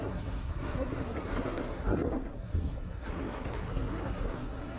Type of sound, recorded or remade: remade